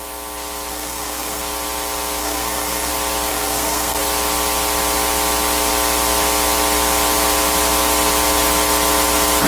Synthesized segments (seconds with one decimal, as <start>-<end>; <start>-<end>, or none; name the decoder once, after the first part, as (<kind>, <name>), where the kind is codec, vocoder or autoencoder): 0.7-1.4 (codec, SNAC); 2.2-2.9; 3.3-4.0